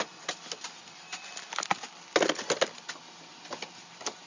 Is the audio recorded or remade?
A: recorded